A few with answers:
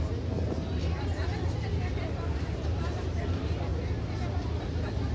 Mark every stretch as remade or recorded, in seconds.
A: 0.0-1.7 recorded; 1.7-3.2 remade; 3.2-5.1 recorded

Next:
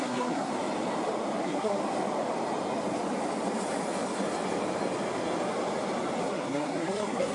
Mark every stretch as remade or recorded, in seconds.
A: 0.0-0.5 remade; 0.5-1.4 recorded; 1.4-1.8 remade; 1.8-6.2 recorded; 6.2-7.3 remade

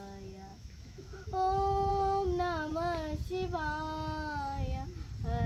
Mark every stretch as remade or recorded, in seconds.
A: 0.0-0.5 recorded; 0.5-1.9 remade; 1.9-5.5 recorded

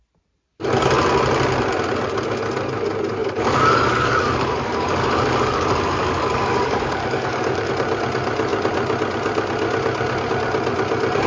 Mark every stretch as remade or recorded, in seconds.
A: 0.0-3.2 recorded; 3.2-7.7 remade; 7.7-11.3 recorded

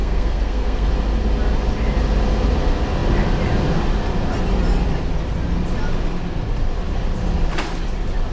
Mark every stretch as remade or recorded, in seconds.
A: 0.0-0.9 remade; 0.9-8.3 recorded

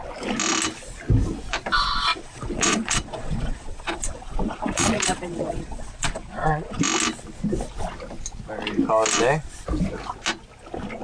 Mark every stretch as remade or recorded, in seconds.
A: 0.0-2.1 recorded; 2.1-6.8 remade; 6.8-11.0 recorded

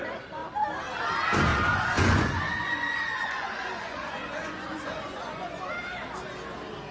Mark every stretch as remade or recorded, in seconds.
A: 0.0-1.5 recorded; 1.5-5.6 remade; 5.6-6.9 recorded